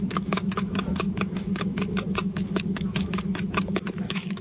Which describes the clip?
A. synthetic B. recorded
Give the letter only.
A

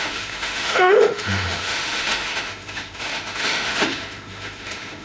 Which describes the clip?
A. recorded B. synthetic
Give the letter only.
B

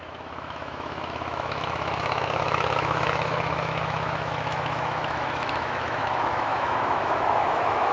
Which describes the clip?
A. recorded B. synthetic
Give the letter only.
B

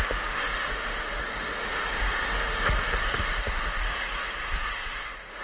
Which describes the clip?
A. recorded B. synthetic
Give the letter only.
B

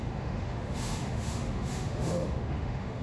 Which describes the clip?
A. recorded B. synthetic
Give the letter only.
B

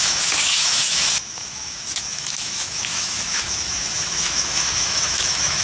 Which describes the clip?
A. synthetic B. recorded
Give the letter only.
A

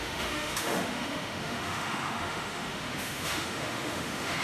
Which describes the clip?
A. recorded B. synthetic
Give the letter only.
B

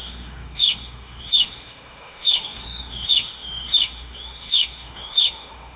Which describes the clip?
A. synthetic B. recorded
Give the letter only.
A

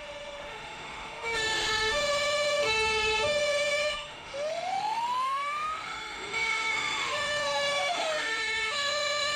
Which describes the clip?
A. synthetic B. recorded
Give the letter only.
A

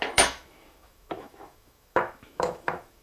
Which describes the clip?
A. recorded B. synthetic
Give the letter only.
B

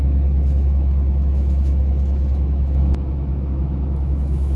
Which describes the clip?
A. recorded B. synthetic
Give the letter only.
B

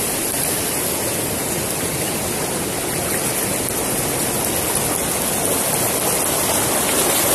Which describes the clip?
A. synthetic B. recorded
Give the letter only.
B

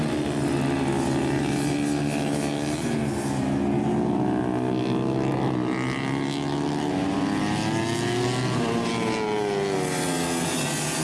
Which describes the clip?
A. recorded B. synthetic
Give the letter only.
A